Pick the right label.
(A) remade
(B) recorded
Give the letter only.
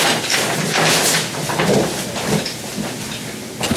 B